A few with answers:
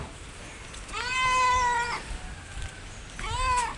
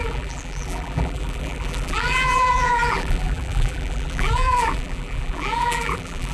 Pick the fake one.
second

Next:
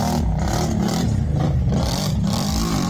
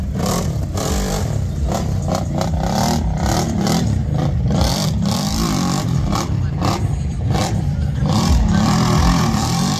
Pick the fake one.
second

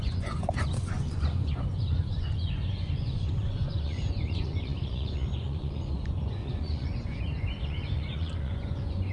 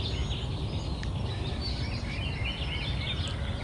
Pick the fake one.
first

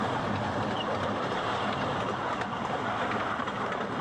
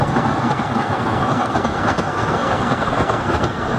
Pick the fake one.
second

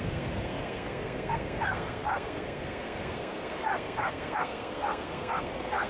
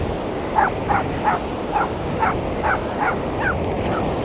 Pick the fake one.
first